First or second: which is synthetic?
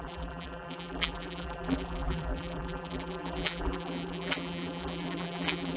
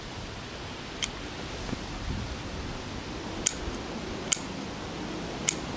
first